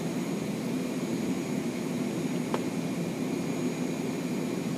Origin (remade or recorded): recorded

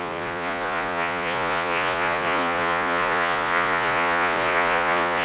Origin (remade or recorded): remade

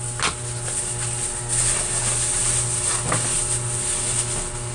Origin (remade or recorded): recorded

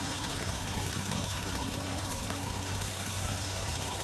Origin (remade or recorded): remade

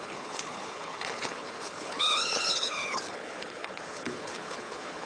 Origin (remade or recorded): remade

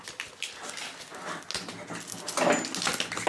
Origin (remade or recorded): recorded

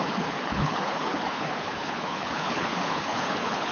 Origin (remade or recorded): remade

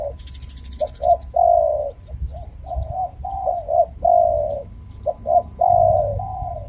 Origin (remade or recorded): recorded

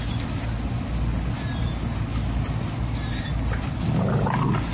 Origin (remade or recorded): recorded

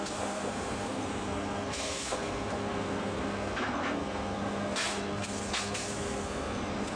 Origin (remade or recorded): remade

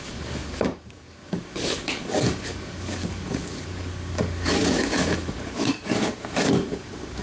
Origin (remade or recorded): remade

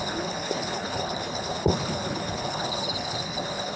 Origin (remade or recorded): remade